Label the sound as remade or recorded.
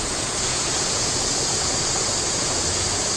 remade